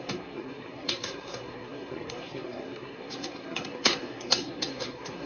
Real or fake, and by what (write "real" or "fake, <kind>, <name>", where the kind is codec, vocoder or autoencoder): fake, codec, SNAC